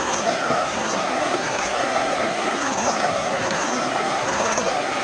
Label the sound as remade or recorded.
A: remade